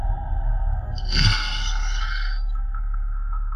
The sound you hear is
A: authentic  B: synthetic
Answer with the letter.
B